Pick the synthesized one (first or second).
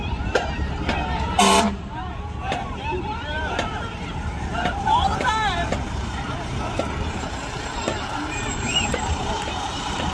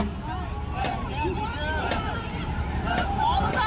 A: first